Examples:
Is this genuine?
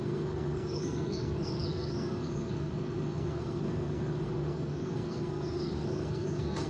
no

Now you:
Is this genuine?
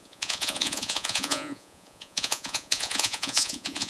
no